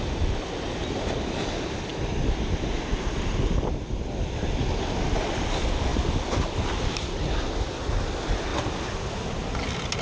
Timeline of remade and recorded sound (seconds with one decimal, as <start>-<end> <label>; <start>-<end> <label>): 0.0-10.0 recorded